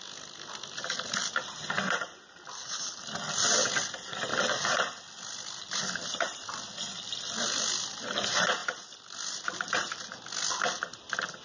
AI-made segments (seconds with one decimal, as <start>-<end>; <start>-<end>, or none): none